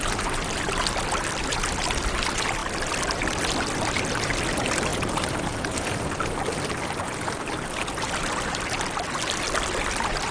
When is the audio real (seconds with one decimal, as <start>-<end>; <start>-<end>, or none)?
0.0-4.9; 6.0-10.3